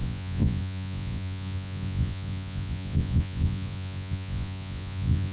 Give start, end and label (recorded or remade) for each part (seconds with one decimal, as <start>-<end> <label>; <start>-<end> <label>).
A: 0.0-5.3 remade